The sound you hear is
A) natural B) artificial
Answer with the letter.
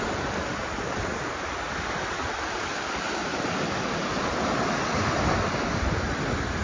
A